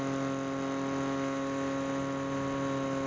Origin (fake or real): real